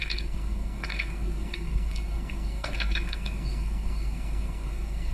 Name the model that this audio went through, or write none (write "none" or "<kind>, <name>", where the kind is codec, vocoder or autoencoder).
codec, SNAC